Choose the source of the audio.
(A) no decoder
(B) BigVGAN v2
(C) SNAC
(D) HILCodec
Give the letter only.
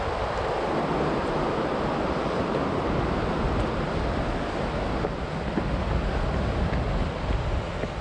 A